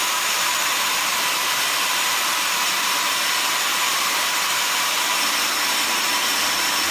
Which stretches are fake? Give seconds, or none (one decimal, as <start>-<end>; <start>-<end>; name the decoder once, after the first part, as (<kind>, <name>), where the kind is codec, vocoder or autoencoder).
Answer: 0.0-3.3 (vocoder, BigVGAN v2); 3.7-5.1